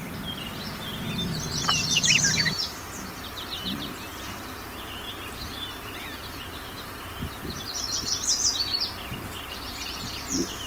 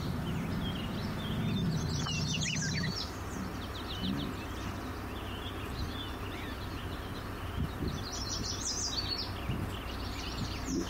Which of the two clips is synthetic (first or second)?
first